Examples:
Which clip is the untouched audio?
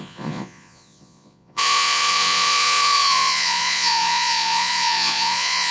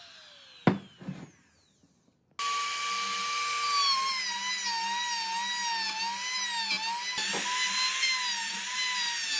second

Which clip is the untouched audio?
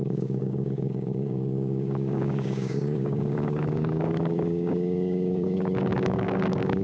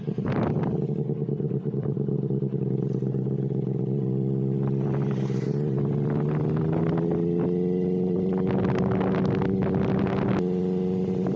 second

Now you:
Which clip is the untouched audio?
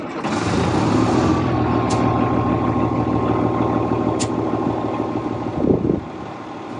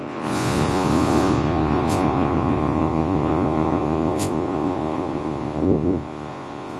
first